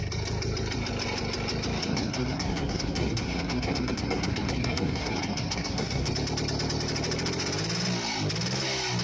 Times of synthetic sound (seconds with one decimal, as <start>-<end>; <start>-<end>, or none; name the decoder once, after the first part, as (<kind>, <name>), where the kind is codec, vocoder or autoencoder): 1.8-6.1 (codec, SNAC)